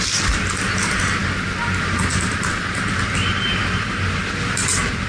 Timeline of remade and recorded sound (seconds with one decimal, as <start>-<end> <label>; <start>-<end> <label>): 0.0-5.1 recorded